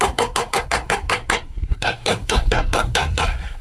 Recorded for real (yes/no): no